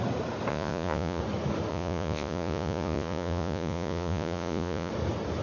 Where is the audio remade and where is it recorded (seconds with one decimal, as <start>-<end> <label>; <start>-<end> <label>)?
0.0-0.5 recorded; 0.5-1.2 remade; 1.2-1.7 recorded; 1.7-4.9 remade; 4.9-5.4 recorded